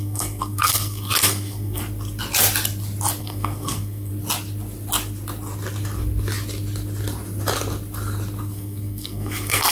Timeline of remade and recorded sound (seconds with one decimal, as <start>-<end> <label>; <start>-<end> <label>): 0.0-1.8 remade; 1.8-3.2 recorded; 3.2-4.1 remade; 4.1-8.4 recorded; 8.4-9.7 remade